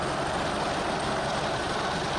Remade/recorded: recorded